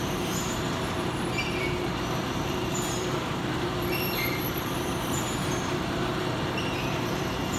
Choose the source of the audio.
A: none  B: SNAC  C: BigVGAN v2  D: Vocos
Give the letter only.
C